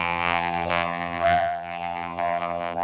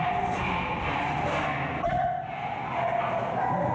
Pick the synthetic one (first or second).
first